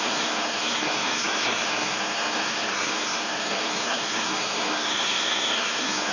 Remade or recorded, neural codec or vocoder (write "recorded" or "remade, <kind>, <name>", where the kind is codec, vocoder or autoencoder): remade, codec, SNAC